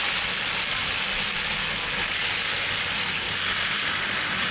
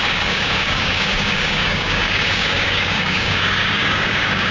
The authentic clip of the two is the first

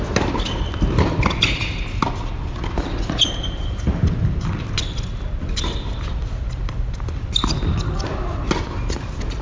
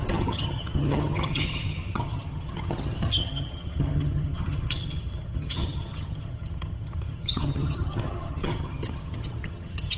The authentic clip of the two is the first